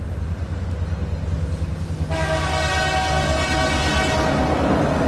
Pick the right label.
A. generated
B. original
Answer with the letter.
B